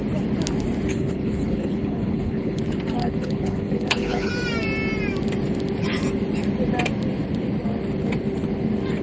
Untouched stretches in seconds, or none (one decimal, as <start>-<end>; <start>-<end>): 0.0-0.9; 2.6-3.0; 4.3-9.0